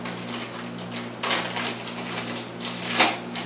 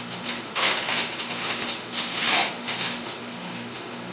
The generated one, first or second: second